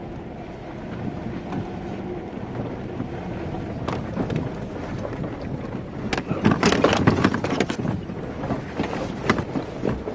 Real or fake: fake